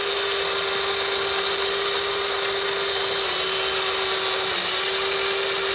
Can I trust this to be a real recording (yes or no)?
yes